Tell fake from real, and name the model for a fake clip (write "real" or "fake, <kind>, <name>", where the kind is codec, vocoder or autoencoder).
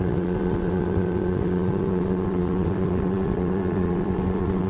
fake, vocoder, WaveNeXt